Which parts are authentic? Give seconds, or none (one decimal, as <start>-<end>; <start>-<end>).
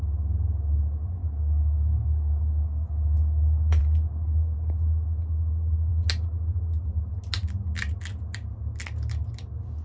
0.0-1.2; 3.8-9.8